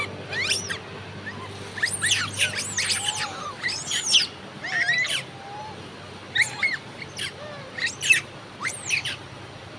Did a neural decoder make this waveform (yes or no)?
no